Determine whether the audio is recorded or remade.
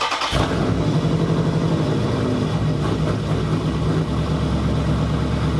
recorded